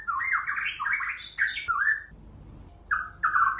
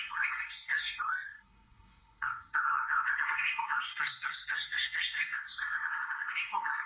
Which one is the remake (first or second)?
second